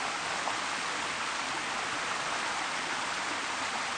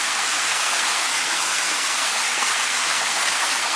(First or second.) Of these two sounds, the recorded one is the first